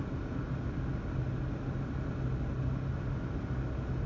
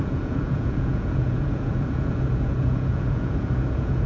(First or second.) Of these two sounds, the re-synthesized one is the second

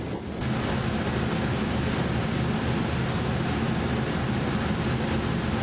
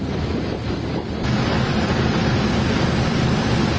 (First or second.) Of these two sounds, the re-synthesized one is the second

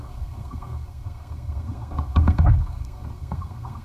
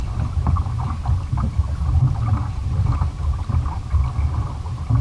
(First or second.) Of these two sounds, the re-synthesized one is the first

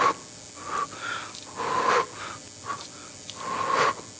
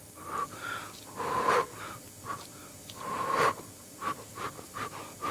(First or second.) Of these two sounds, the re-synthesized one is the second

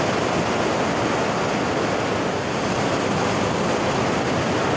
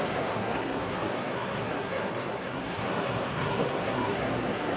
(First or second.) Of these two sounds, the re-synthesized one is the second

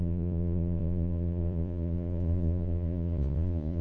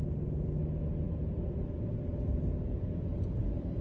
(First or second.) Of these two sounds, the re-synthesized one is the first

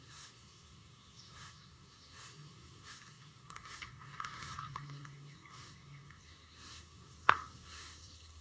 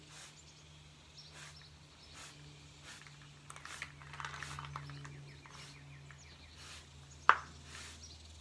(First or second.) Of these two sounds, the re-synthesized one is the first